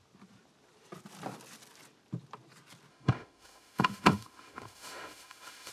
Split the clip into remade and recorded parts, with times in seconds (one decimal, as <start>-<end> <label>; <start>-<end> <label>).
0.0-2.9 recorded; 2.9-5.7 remade